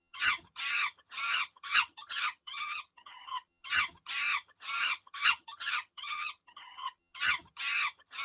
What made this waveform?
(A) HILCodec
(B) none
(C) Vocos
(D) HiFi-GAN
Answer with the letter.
D